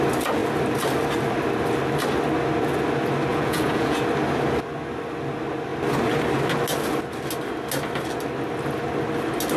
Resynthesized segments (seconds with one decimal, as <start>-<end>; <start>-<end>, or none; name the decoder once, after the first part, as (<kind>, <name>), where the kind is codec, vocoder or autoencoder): 3.3-4.0 (vocoder, Vocos)